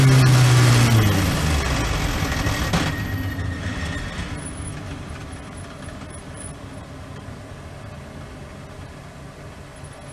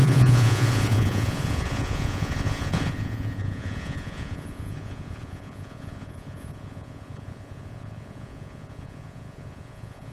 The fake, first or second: second